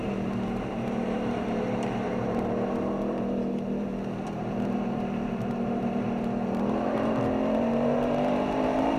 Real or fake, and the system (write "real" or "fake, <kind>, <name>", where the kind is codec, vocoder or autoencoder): fake, vocoder, BigVGAN v2